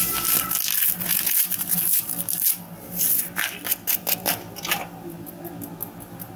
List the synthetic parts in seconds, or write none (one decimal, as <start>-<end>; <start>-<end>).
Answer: none